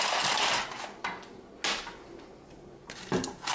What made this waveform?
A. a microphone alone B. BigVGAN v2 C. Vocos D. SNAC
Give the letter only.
A